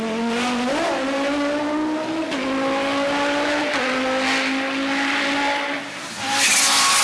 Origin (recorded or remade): recorded